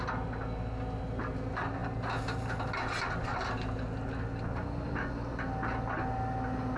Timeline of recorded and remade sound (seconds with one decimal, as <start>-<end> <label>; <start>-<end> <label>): 0.0-6.8 recorded